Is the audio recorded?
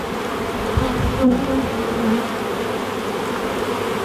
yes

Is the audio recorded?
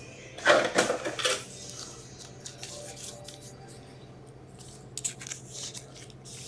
yes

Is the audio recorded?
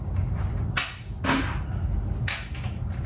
yes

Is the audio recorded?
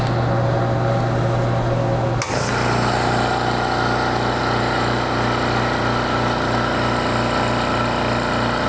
yes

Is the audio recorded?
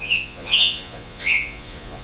no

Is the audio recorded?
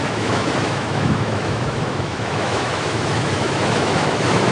no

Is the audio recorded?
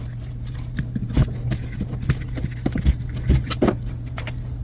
yes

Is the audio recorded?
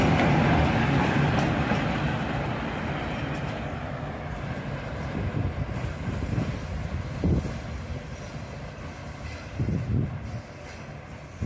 yes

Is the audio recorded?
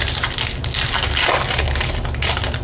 yes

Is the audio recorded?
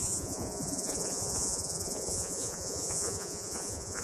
no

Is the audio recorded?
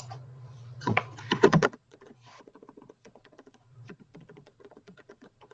no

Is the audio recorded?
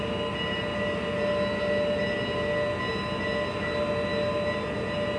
yes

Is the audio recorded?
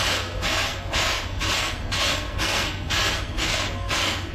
no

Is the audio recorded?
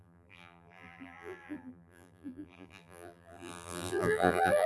no